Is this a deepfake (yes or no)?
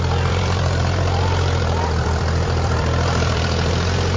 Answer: yes